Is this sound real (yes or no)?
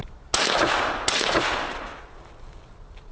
yes